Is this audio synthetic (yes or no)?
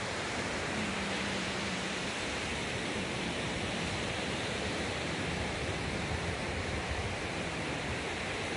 yes